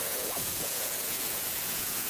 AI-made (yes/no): yes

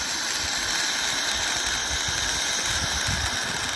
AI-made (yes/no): no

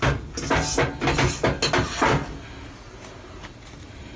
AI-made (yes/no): no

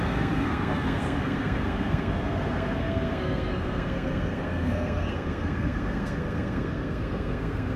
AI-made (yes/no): yes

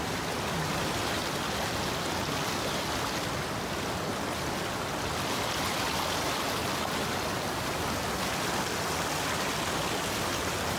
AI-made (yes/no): no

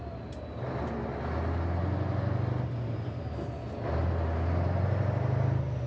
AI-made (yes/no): no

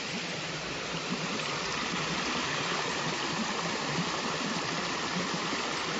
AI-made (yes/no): yes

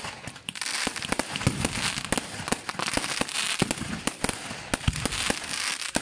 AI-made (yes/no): no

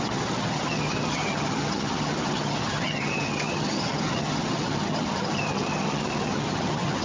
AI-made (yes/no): yes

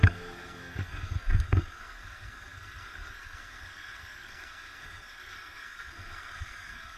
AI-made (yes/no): yes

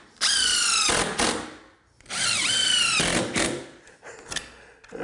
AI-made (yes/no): no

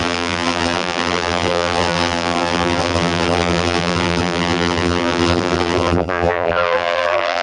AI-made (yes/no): yes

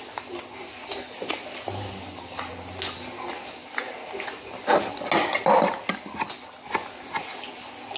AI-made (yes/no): no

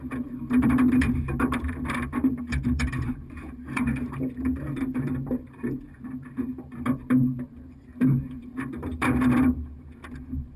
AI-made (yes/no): yes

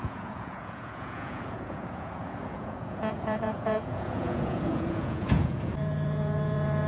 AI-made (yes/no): yes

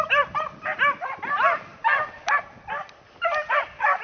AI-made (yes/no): yes